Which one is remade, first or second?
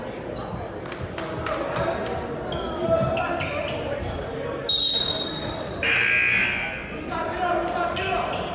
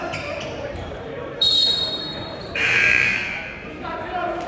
second